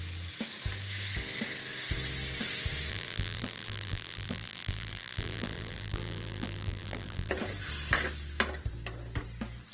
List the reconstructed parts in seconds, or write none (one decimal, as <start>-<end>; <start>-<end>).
2.9-7.3